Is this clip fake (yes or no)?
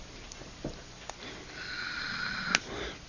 no